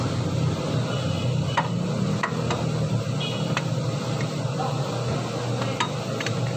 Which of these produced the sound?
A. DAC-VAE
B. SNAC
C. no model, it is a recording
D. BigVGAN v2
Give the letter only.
C